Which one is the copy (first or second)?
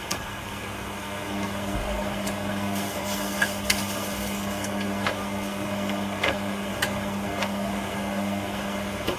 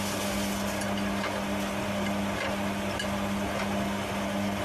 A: first